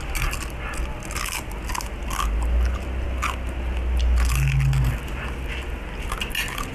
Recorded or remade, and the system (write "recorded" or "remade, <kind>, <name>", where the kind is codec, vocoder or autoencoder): recorded